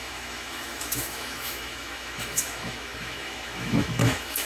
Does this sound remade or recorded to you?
remade